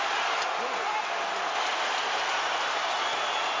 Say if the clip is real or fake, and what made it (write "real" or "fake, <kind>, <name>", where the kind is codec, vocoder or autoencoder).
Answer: real